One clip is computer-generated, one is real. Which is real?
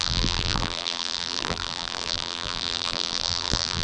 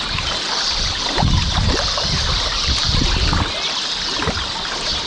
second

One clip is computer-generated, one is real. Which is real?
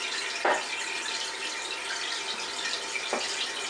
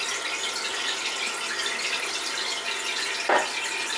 second